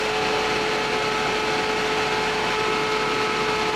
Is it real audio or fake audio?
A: real